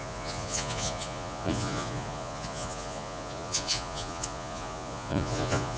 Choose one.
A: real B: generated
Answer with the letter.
B